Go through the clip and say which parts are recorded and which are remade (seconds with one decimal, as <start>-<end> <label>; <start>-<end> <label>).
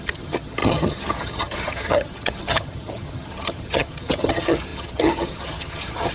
0.0-6.1 remade